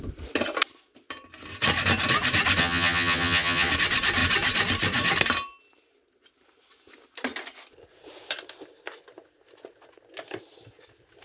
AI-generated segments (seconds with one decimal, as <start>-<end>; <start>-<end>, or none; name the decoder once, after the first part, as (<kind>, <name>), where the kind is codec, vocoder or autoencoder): 2.6-3.7 (vocoder, HiFi-GAN)